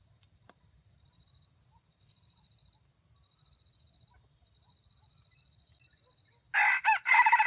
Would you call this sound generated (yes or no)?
no